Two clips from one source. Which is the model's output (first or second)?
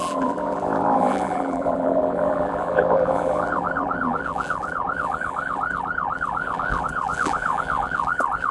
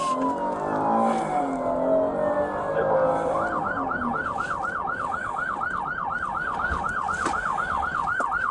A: first